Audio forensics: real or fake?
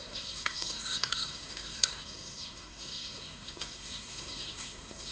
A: fake